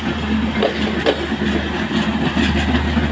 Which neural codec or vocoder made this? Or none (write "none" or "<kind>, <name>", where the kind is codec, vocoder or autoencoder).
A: none